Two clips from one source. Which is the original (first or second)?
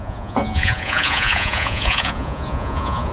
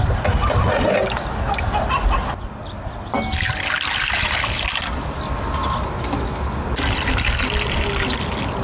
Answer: second